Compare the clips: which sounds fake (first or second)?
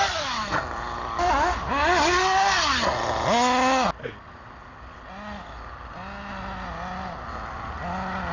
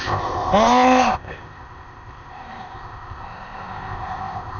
second